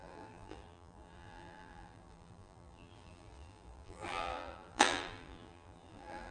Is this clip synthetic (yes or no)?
yes